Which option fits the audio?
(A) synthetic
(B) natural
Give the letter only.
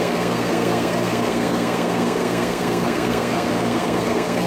A